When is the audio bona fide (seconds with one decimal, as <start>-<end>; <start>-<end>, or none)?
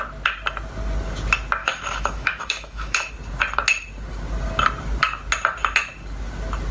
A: 0.0-1.6; 3.1-6.7